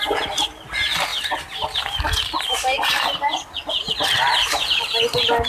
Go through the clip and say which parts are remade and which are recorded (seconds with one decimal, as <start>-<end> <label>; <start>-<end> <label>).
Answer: 0.0-5.5 recorded